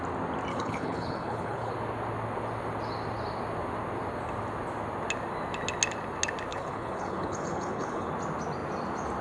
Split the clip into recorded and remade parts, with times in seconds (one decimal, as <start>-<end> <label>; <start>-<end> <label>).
0.0-0.5 recorded; 0.5-1.7 remade; 1.7-6.5 recorded; 6.5-8.1 remade; 8.1-9.2 recorded